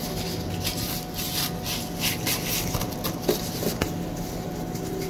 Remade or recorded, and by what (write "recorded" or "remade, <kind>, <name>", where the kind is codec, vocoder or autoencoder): recorded